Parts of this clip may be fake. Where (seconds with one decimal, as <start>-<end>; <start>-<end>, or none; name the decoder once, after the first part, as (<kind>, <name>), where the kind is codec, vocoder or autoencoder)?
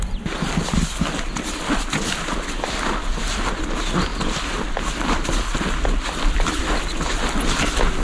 none